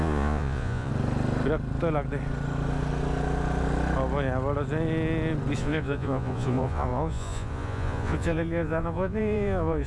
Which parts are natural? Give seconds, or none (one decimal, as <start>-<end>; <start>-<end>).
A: 0.9-5.6